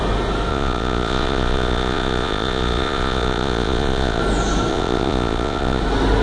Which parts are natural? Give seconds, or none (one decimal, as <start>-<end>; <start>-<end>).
0.0-0.5; 4.2-4.7; 5.8-6.2